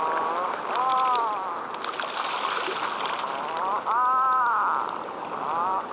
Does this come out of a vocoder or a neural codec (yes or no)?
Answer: no